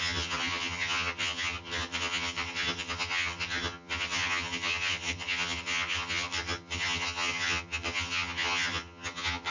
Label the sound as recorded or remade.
remade